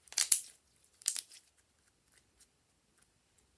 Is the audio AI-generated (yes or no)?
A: yes